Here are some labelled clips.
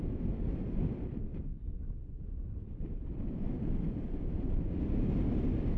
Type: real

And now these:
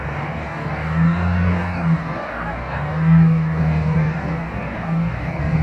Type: fake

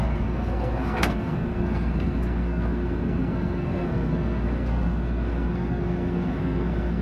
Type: fake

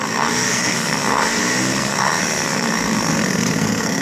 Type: fake